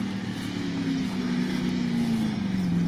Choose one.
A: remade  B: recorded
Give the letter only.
B